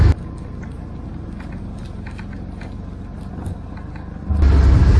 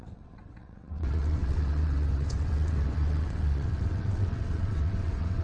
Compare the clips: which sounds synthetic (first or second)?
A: second